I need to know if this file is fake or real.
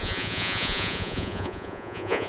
fake